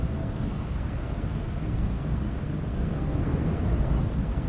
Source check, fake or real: fake